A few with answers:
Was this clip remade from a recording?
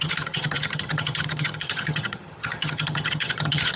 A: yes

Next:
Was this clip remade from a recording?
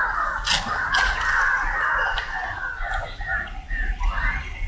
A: no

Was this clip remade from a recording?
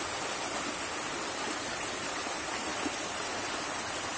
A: no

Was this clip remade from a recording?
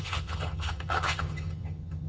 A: yes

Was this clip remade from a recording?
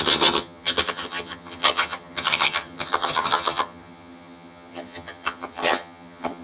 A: yes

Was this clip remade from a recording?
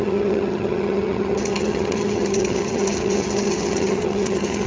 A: yes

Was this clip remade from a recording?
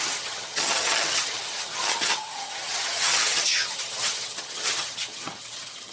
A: yes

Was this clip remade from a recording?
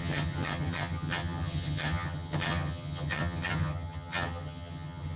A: yes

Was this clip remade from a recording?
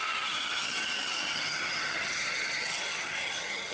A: yes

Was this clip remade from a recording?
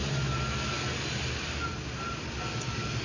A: no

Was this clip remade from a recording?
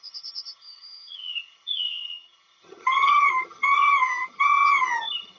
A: yes